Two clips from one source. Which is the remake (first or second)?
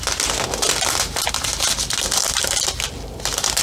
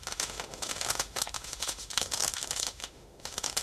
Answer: second